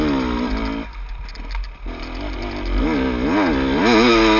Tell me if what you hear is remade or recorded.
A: recorded